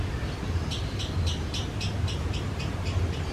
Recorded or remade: recorded